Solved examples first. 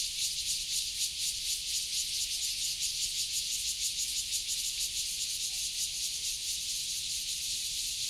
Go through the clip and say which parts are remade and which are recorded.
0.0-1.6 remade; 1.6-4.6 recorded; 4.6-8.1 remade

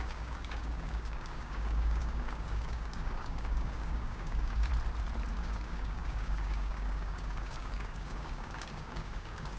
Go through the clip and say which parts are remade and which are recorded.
0.0-4.7 remade; 4.7-5.3 recorded; 5.3-9.6 remade

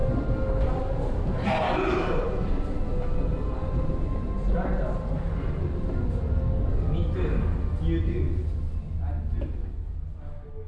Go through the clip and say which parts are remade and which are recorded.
0.0-10.7 recorded